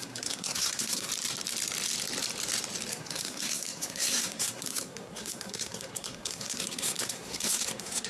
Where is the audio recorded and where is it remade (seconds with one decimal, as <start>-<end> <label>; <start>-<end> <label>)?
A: 0.0-1.1 remade; 1.1-2.9 recorded; 2.9-8.1 remade